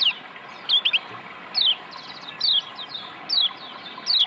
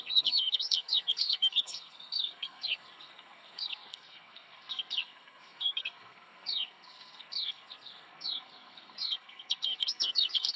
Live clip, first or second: first